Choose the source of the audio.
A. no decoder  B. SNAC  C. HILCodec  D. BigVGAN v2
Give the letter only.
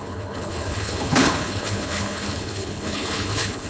C